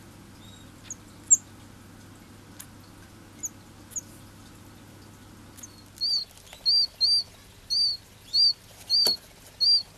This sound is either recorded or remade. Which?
recorded